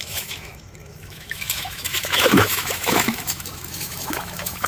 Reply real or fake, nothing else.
fake